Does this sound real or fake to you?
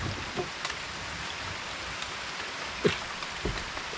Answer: fake